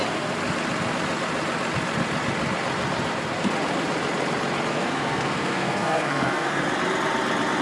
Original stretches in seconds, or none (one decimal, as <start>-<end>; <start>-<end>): 0.0-4.7; 6.6-7.6